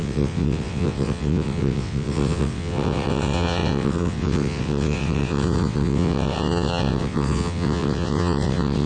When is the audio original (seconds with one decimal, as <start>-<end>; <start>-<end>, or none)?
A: none